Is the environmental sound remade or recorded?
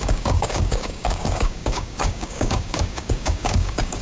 remade